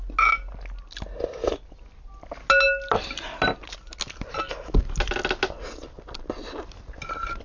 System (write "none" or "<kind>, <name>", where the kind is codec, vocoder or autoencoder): none